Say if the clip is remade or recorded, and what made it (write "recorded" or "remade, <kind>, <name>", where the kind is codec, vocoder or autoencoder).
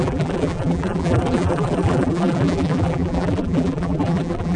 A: remade, vocoder, BigVGAN v2